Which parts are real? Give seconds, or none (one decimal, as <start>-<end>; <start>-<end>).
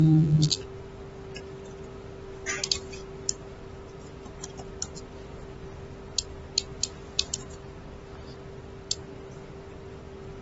0.6-10.4